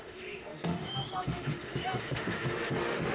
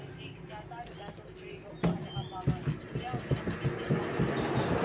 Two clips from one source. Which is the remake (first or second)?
first